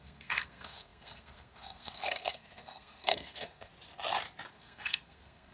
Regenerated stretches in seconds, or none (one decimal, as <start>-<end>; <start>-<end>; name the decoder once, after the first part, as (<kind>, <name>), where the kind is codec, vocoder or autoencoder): 0.0-3.7 (codec, SNAC); 4.5-5.5